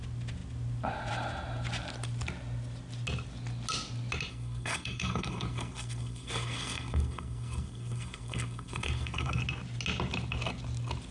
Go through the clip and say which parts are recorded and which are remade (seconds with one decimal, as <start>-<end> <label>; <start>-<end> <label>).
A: 0.0-4.3 recorded; 4.3-9.4 remade; 9.4-11.1 recorded